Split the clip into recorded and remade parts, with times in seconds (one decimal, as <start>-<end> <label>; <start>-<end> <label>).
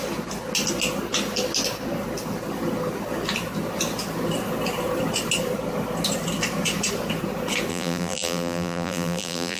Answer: 0.0-7.7 recorded; 7.7-9.6 remade